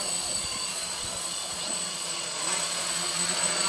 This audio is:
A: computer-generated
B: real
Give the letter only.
A